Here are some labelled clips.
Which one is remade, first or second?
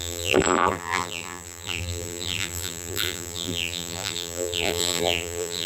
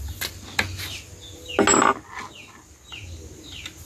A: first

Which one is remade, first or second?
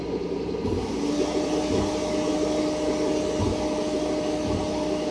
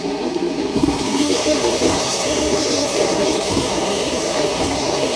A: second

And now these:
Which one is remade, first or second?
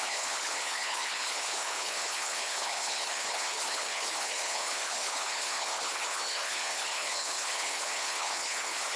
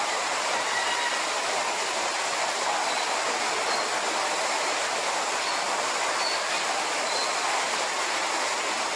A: first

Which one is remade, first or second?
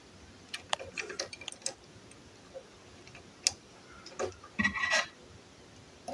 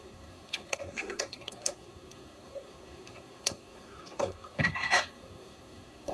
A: second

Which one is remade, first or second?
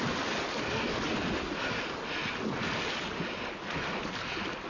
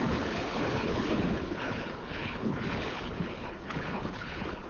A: second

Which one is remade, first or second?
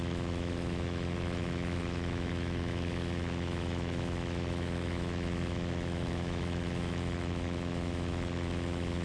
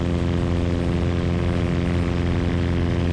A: first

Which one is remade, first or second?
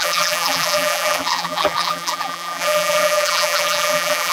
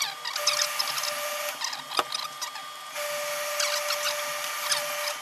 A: first